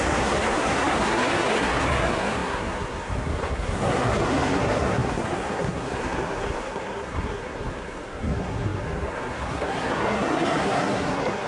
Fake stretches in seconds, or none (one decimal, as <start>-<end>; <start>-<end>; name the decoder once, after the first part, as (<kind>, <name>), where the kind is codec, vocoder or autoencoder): 0.0-11.5 (codec, SNAC)